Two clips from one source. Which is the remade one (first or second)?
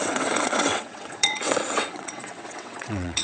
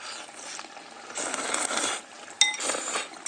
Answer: first